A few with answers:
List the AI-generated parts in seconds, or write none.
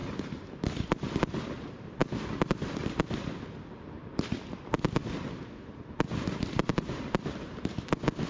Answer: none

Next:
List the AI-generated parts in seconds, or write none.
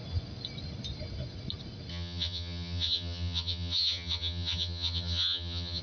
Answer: 1.9-5.8 (vocoder, HiFi-GAN)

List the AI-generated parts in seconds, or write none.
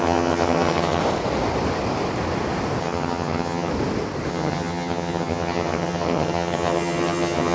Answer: 0.0-1.0 (vocoder, HiFi-GAN); 2.8-3.7; 4.3-7.5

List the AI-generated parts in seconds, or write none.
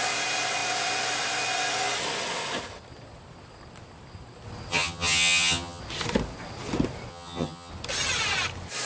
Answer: 4.7-5.8 (vocoder, HiFi-GAN); 7.1-7.7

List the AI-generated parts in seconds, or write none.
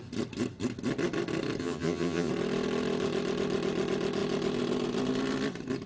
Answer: 1.6-2.3 (vocoder, HiFi-GAN)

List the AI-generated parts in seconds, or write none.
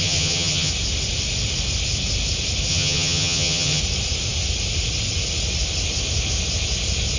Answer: 0.0-0.7 (vocoder, HiFi-GAN); 2.7-3.8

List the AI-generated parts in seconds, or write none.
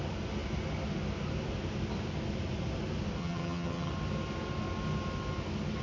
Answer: 3.2-3.9 (vocoder, HiFi-GAN)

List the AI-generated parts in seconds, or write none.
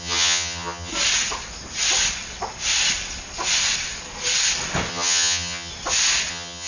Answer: 0.0-0.9 (vocoder, HiFi-GAN); 4.9-5.7; 6.3-6.7